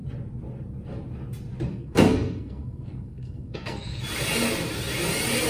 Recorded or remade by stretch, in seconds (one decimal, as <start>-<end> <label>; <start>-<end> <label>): 0.0-1.7 recorded; 1.7-4.0 remade; 4.0-5.5 recorded